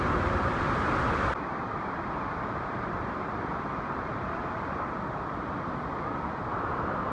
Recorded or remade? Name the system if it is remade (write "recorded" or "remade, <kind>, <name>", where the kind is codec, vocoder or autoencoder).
remade, vocoder, BigVGAN v2